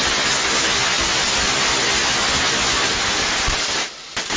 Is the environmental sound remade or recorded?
recorded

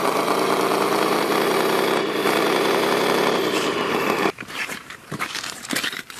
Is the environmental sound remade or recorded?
remade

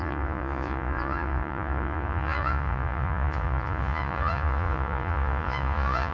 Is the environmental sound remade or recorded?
remade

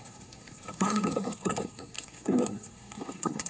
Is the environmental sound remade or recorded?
remade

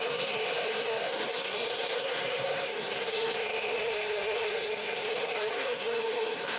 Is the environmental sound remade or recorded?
remade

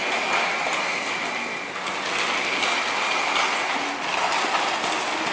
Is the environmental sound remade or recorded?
recorded